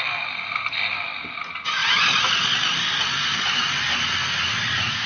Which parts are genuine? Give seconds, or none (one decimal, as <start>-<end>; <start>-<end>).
0.0-1.8; 2.4-3.3; 4.4-5.1